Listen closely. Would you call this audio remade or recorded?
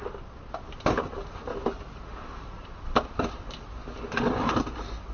recorded